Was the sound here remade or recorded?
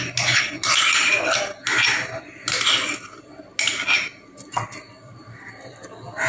recorded